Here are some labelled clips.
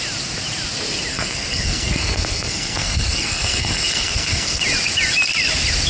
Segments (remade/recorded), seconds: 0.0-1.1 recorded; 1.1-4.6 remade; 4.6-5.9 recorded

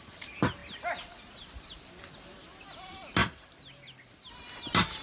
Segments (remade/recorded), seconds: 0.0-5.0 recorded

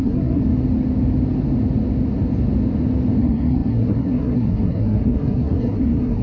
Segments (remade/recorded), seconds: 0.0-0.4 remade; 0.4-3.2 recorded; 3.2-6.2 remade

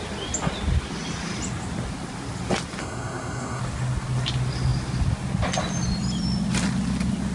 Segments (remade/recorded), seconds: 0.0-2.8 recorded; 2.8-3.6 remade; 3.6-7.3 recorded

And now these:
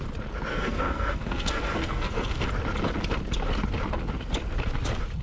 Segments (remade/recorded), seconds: 0.0-0.5 recorded; 0.5-2.5 remade; 2.5-5.2 recorded